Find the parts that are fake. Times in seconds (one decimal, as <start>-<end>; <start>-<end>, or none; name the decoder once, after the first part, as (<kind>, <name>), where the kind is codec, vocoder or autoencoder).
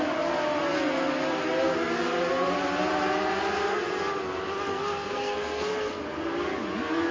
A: 4.7-6.0 (codec, SNAC)